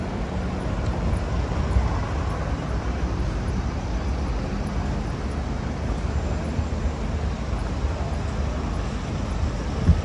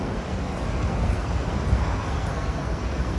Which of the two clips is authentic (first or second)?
first